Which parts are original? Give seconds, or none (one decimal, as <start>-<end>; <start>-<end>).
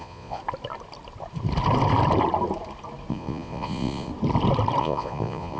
0.4-3.1; 4.1-4.8